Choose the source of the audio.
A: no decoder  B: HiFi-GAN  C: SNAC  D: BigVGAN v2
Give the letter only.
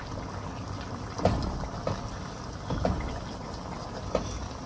A